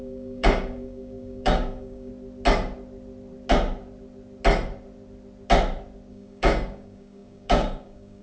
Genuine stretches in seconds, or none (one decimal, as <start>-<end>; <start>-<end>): 2.1-6.1